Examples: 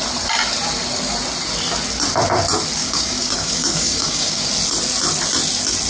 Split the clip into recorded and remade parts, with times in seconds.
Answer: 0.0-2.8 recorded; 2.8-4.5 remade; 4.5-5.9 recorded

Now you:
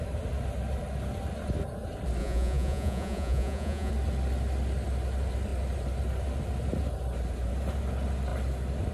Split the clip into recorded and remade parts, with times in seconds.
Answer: 0.0-2.2 recorded; 2.2-3.9 remade; 3.9-8.9 recorded

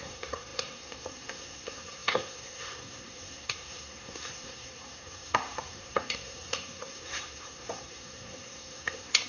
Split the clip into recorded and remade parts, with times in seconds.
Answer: 0.0-9.3 remade

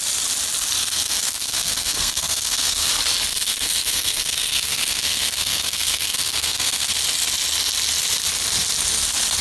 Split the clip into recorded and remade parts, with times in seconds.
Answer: 0.0-0.8 recorded; 0.8-2.9 remade; 2.9-3.3 recorded; 3.3-6.9 remade; 6.9-9.4 recorded

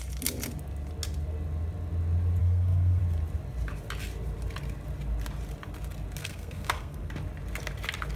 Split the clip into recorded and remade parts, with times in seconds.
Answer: 0.0-2.4 recorded; 2.4-3.0 remade; 3.0-6.2 recorded; 6.2-7.1 remade; 7.1-8.2 recorded

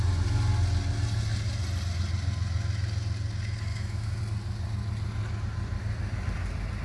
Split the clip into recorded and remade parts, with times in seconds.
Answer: 0.0-3.7 recorded; 3.7-4.2 remade; 4.2-6.8 recorded